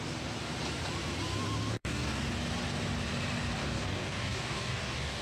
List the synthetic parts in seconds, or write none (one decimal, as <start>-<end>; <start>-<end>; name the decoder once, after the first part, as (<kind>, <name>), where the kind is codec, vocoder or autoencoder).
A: 1.7-2.3 (codec, DAC); 3.6-5.2